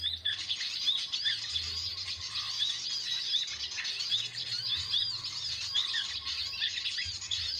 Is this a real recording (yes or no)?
yes